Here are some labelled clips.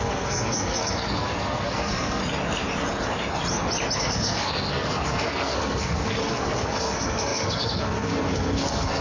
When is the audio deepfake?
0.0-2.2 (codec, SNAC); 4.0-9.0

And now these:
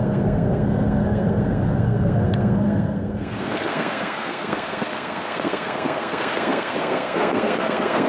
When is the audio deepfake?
0.0-8.1 (codec, SNAC)

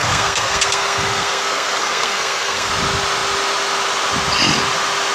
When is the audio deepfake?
0.0-2.7 (codec, SNAC)

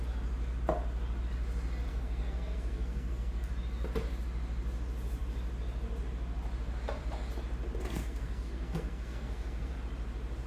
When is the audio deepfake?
1.9-3.5 (codec, SNAC); 7.8-9.7

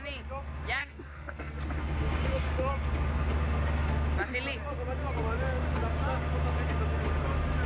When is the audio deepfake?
0.8-1.6 (codec, SNAC)

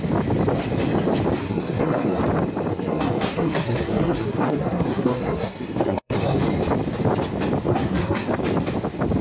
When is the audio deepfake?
1.4-2.2 (codec, SNAC); 2.7-6.4; 7.7-8.3

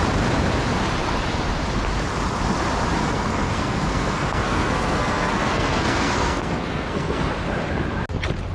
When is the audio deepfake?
3.0-7.3 (codec, SNAC)

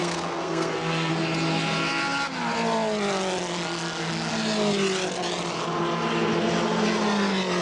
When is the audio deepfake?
0.0-1.1 (codec, SNAC)